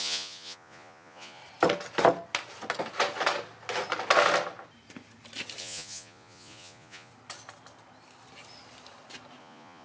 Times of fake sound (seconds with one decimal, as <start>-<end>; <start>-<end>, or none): 0.0-1.4; 5.6-7.1; 9.4-9.8